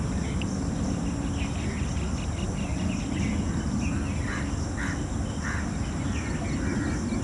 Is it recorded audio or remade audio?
recorded